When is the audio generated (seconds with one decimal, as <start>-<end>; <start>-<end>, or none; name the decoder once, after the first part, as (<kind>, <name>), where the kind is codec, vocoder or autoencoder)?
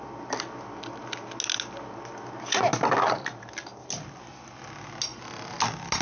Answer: none